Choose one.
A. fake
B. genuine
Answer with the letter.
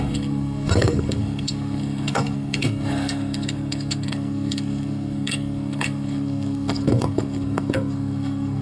A